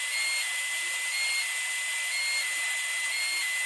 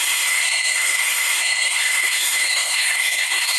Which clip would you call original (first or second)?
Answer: first